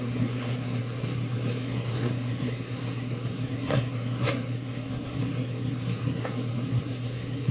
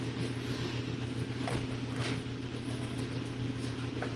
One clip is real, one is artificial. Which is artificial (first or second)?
first